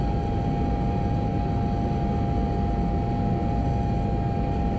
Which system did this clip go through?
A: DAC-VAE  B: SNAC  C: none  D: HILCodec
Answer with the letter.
C